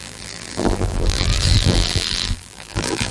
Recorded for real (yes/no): no